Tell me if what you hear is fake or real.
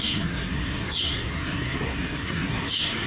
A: fake